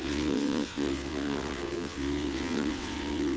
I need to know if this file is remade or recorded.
remade